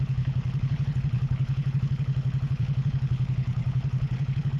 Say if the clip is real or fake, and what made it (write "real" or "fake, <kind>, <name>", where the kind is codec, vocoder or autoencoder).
fake, codec, HILCodec